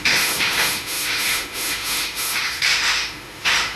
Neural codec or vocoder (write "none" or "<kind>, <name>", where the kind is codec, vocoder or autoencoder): autoencoder, DAC-VAE